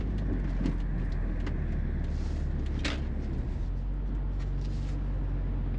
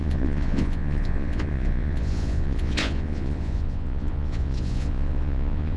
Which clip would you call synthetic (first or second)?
second